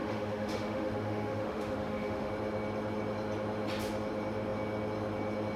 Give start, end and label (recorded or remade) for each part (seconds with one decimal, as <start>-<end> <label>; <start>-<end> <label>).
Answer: 0.0-2.3 remade; 2.3-5.6 recorded